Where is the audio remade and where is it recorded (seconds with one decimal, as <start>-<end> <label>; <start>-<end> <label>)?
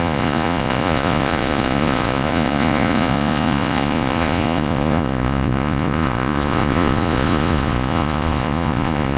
0.0-9.2 remade